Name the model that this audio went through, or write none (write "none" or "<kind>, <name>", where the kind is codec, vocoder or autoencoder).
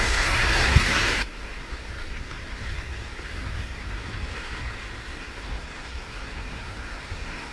codec, SNAC